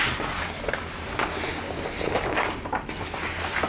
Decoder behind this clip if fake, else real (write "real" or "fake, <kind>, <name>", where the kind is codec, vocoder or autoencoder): real